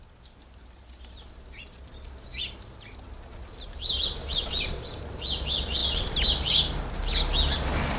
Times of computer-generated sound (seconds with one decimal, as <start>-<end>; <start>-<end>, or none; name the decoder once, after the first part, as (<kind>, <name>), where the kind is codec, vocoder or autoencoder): none